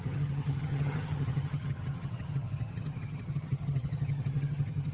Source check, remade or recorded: remade